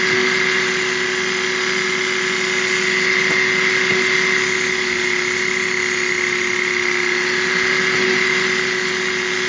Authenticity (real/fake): real